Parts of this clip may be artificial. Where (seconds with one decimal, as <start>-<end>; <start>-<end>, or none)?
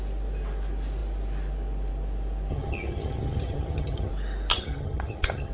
2.5-4.1; 4.5-5.5